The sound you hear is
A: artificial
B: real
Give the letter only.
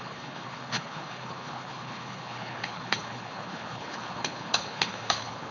A